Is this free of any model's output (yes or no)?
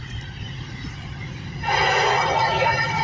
no